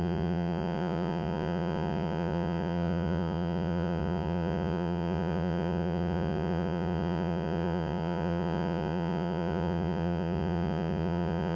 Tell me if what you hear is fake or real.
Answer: fake